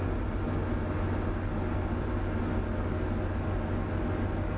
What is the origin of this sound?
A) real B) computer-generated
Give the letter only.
A